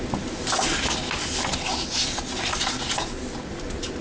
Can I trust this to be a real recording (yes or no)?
yes